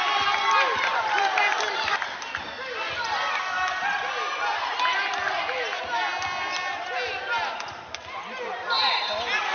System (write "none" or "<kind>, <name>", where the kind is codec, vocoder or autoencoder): none